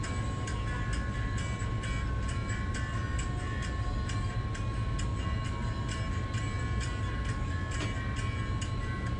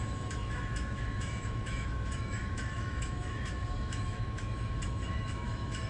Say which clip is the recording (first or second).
first